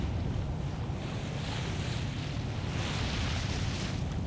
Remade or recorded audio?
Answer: recorded